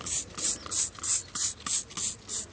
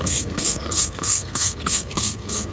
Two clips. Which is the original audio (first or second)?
first